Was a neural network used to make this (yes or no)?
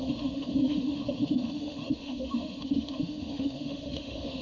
yes